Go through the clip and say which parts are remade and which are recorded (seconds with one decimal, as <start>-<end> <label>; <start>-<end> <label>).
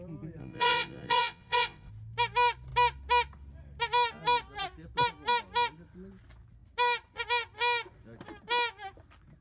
0.0-0.4 recorded; 0.4-1.9 remade; 1.9-9.4 recorded